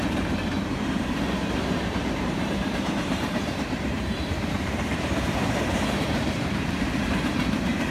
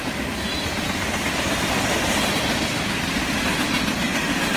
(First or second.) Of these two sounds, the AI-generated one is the first